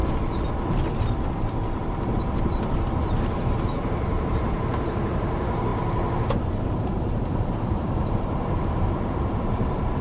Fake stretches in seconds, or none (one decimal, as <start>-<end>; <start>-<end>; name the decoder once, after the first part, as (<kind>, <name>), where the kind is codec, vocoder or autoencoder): 2.9-10.0 (vocoder, BigVGAN v2)